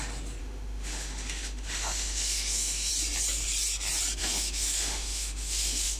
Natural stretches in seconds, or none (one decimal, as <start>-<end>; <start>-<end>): 0.0-0.4; 2.9-4.2